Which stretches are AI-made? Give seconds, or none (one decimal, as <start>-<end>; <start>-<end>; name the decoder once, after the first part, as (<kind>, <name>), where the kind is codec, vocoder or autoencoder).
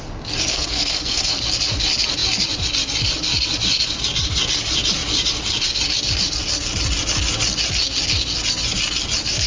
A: 0.5-1.4 (codec, SNAC)